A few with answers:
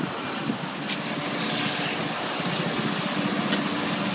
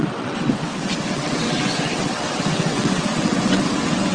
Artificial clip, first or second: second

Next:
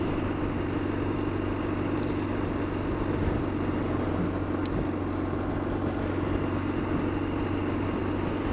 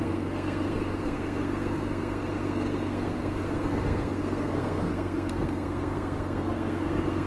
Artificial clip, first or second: second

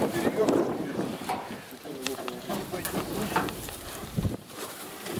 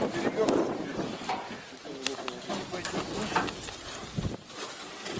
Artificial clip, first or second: first